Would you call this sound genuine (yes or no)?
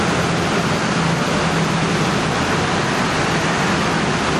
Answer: yes